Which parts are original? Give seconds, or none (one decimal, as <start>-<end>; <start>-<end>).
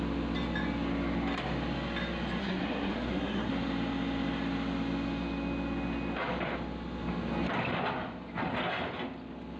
0.0-2.4; 3.5-9.6